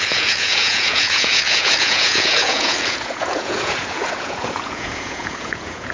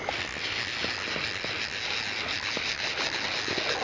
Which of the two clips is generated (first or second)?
first